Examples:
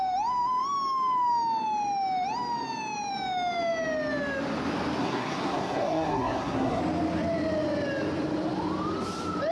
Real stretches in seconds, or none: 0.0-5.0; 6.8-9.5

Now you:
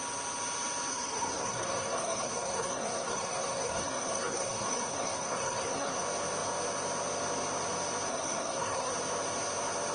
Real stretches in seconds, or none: 0.0-0.9; 6.0-8.1; 8.9-9.9

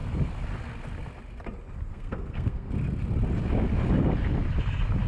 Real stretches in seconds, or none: 0.0-1.9; 2.7-5.1